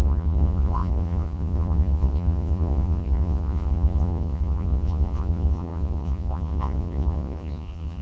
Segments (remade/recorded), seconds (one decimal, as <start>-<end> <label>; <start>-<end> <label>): 0.0-8.0 remade